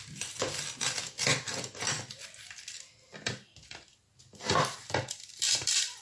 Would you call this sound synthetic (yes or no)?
no